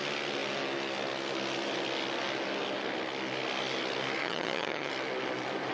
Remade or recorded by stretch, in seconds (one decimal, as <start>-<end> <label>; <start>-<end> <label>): 0.0-4.2 recorded; 4.2-4.9 remade; 4.9-5.7 recorded